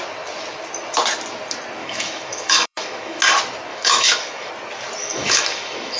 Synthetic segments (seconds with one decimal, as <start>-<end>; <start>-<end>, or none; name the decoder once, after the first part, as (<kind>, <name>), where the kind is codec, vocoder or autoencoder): 1.8-3.2 (autoencoder, DAC-VAE); 3.7-4.5; 5.0-6.0